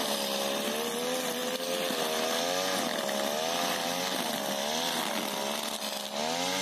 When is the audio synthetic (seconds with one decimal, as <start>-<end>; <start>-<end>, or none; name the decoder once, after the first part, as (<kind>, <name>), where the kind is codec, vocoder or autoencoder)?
none